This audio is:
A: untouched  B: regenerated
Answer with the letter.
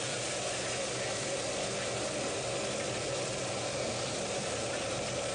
A